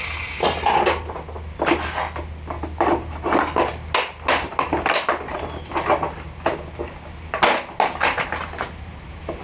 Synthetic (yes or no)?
no